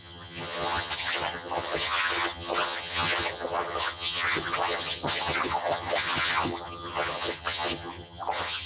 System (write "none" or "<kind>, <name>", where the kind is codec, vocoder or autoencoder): vocoder, HiFi-GAN